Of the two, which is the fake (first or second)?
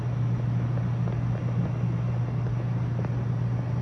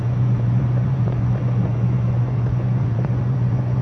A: second